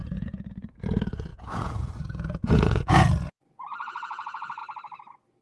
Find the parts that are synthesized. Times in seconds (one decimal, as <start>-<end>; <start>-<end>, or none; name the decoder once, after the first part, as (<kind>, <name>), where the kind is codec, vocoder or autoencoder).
0.0-4.6 (vocoder, Vocos)